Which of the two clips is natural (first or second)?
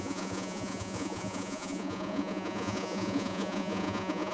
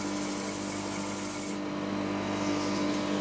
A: second